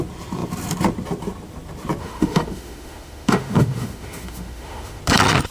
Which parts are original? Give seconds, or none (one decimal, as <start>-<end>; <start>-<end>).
0.0-2.0; 5.0-5.5